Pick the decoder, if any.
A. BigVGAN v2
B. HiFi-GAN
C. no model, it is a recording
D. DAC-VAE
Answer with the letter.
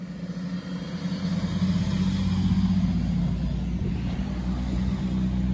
C